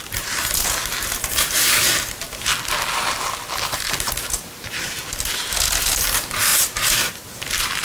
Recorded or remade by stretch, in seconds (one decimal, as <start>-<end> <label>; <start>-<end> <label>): 0.0-2.5 remade; 2.5-3.7 recorded; 3.7-5.0 remade; 5.0-6.0 recorded; 6.0-7.8 remade